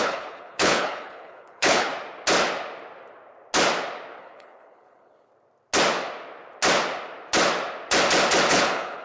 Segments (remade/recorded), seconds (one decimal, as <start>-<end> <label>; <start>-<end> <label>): 0.0-1.9 remade; 1.9-4.2 recorded; 4.2-5.3 remade; 5.3-8.5 recorded; 8.5-9.0 remade

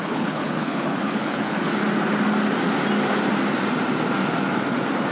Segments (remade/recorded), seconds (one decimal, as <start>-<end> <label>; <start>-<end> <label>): 0.0-1.8 remade; 1.8-5.1 recorded

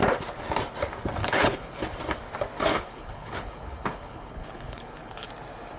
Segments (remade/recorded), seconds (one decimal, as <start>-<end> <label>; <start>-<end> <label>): 0.0-1.2 recorded; 1.2-1.8 remade; 1.8-2.7 recorded; 2.7-5.3 remade; 5.3-5.8 recorded

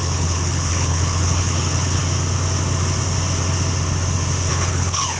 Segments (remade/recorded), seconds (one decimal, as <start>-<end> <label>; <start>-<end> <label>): 0.0-2.0 remade; 2.0-4.5 recorded; 4.5-5.2 remade

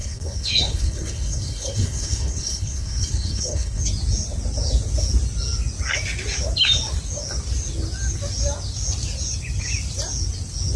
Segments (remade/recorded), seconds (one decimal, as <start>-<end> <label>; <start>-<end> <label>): 0.0-3.8 remade; 3.8-10.8 recorded

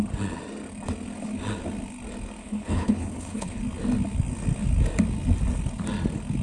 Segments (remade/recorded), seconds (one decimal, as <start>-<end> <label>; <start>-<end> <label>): 0.0-2.4 recorded; 2.4-3.6 remade; 3.6-6.4 recorded

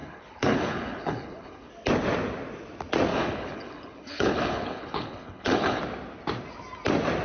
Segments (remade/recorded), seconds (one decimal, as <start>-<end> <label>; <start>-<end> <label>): 0.0-1.7 remade; 1.7-3.1 recorded; 3.1-5.8 remade; 5.8-7.2 recorded